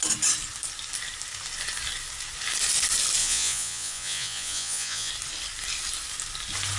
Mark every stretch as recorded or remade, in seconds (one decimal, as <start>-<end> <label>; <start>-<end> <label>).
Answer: 0.0-3.2 recorded; 3.2-5.1 remade; 5.1-6.8 recorded